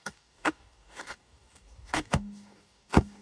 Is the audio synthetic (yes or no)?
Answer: yes